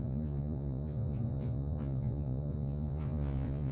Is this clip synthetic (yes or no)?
yes